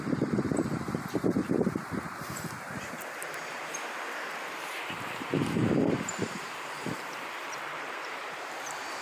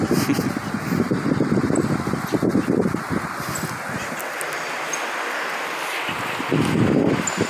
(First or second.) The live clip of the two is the second